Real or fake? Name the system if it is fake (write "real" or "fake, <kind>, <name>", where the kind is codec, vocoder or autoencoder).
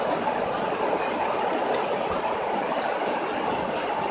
real